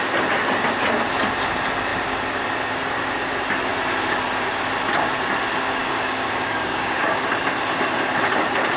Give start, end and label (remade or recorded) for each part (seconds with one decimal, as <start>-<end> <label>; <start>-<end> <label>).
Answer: 0.0-5.8 recorded; 5.8-7.3 remade; 7.3-8.8 recorded